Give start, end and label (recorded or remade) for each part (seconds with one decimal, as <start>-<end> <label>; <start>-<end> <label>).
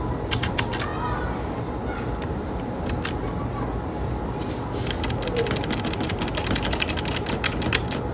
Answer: 0.0-8.1 recorded